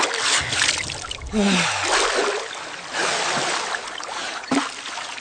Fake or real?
real